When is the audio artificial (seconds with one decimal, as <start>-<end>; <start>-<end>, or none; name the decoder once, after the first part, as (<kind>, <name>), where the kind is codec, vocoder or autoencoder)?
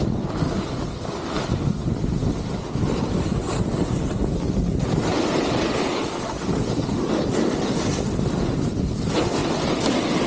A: none